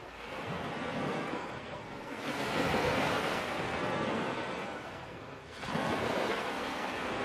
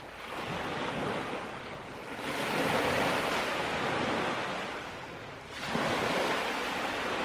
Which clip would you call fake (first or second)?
first